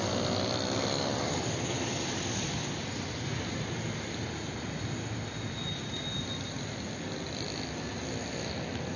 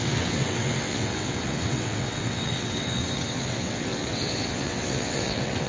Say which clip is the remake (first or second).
second